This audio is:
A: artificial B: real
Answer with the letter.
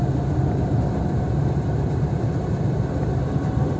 B